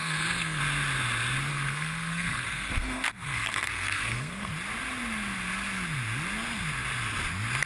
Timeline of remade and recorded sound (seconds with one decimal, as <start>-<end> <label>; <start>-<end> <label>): 0.0-0.6 remade; 0.6-1.5 recorded; 1.5-4.5 remade; 4.5-7.7 recorded